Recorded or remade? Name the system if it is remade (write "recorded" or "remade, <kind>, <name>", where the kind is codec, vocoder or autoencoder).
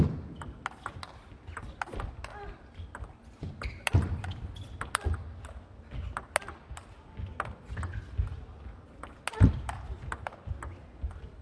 recorded